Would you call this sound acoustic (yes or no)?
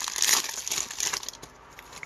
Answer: yes